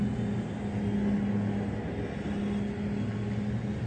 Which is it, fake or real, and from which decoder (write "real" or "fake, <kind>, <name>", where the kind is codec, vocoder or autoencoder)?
real